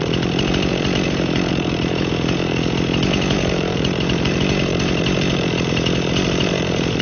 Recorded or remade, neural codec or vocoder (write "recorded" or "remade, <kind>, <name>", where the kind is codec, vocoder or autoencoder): remade, vocoder, BigVGAN v2